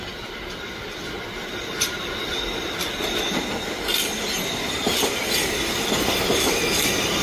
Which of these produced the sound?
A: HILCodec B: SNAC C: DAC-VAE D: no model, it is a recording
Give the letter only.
D